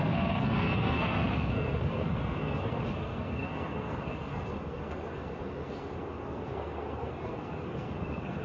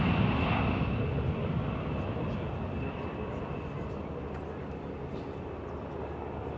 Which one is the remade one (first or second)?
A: first